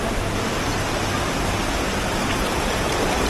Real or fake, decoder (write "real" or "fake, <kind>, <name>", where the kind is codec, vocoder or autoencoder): real